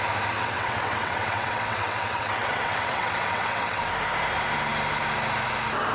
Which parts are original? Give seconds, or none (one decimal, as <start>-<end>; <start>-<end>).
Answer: 0.0-0.4; 3.9-5.9